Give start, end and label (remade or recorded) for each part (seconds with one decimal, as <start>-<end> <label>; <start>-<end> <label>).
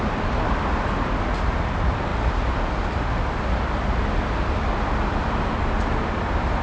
0.0-6.6 recorded